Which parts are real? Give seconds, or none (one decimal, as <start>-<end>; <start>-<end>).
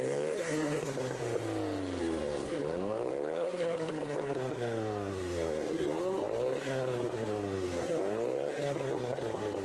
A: 1.2-2.0